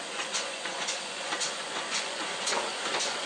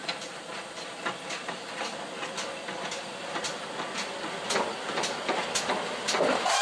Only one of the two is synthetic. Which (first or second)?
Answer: first